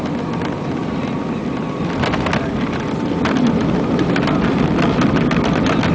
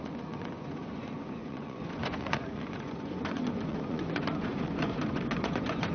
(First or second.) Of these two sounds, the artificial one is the second